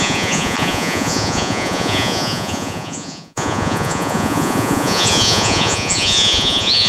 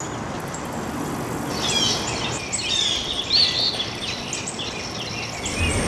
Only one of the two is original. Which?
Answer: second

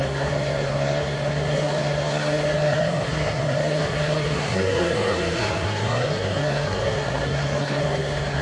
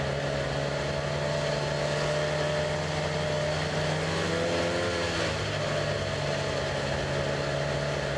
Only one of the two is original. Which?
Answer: second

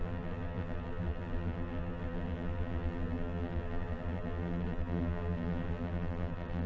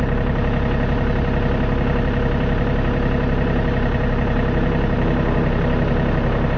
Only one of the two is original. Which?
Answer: second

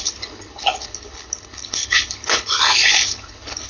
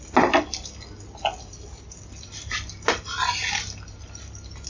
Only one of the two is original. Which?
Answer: second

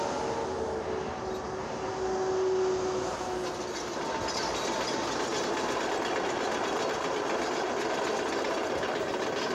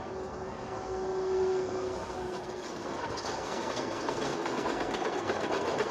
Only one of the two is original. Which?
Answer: first